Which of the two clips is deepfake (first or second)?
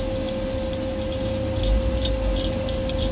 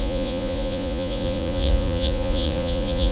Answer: second